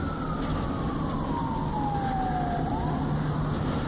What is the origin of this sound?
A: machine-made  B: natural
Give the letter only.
B